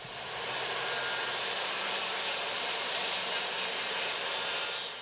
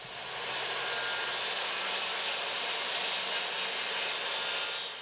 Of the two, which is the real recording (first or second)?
second